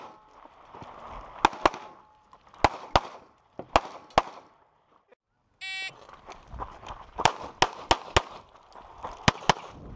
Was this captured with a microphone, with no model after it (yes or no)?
yes